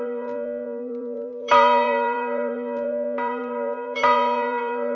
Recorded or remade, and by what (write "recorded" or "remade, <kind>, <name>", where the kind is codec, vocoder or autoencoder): remade, vocoder, BigVGAN v2